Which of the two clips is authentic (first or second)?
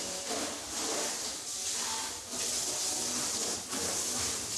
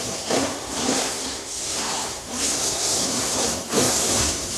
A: first